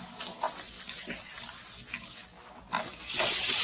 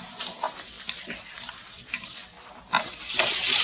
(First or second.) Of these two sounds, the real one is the first